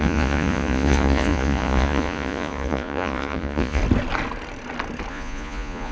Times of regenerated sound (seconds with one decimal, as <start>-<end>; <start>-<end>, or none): 0.0-3.8; 5.1-5.9